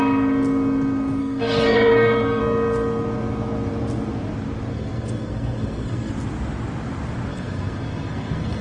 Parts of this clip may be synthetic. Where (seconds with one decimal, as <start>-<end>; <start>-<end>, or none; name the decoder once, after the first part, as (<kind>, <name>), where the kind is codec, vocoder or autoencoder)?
1.2-2.4 (codec, SNAC); 4.7-6.1; 7.3-8.6